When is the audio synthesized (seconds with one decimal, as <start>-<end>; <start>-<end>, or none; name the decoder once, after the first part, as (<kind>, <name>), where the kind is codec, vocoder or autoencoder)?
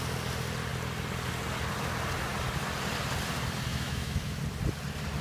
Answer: 3.7-4.4 (autoencoder, DAC-VAE)